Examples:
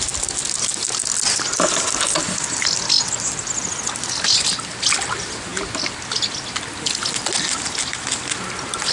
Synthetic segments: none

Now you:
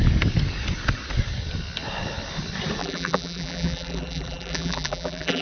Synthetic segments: 2.8-5.4

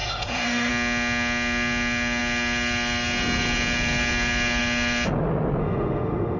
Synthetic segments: 0.0-0.7; 5.6-6.4

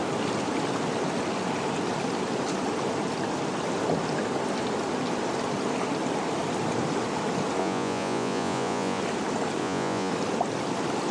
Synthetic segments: 7.6-9.0; 9.6-10.1

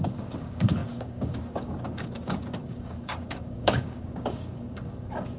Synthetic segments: 0.0-5.4

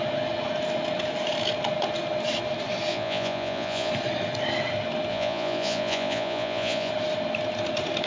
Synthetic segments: 2.9-3.9; 5.1-6.9